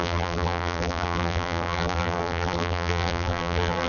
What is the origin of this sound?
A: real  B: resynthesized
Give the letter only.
B